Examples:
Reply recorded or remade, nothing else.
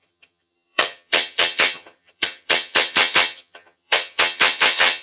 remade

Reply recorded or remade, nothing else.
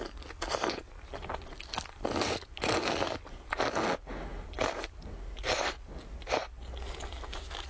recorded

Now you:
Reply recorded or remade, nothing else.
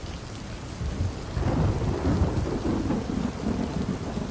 recorded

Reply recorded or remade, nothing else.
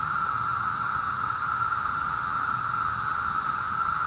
remade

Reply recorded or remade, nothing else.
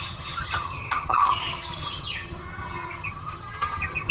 remade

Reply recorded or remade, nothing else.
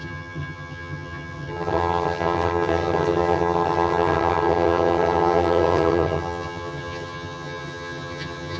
remade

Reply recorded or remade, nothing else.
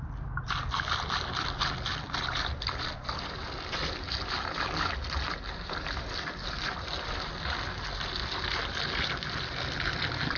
recorded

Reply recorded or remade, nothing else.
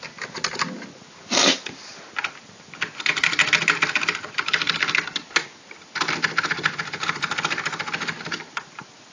recorded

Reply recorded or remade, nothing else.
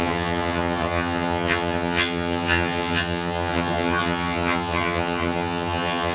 remade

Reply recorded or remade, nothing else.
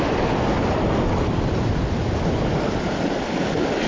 recorded